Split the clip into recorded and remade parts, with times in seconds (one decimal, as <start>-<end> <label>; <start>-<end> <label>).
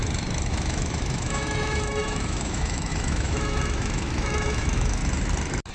0.0-0.5 recorded; 0.5-5.0 remade; 5.0-5.7 recorded